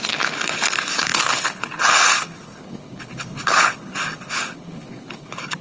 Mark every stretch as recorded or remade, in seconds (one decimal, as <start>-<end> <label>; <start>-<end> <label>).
0.0-5.6 remade